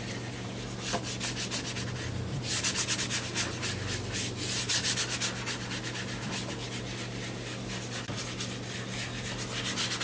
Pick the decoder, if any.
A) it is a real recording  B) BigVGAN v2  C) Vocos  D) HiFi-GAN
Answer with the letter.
A